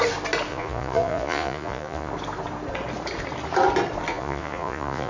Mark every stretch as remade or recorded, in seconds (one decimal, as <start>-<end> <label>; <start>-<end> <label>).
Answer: 0.0-0.5 recorded; 0.5-2.1 remade; 2.1-4.1 recorded; 4.1-5.1 remade